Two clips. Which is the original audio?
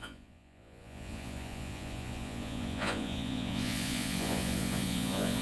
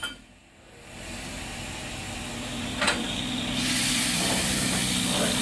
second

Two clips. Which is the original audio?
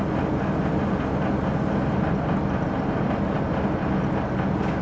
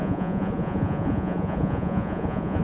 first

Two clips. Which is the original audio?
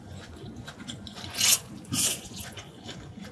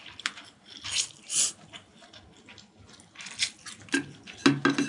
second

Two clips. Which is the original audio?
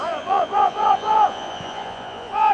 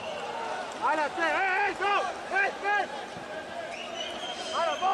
second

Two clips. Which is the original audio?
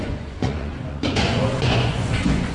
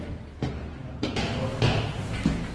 second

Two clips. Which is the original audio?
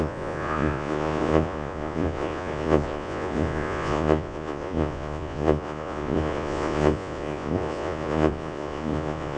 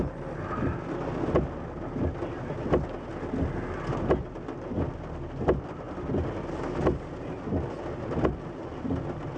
second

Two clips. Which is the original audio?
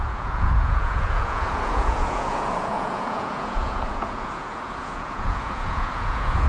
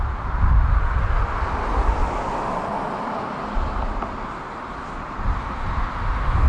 second